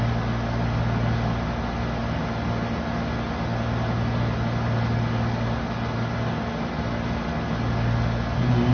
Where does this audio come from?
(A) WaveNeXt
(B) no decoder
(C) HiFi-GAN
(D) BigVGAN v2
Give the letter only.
B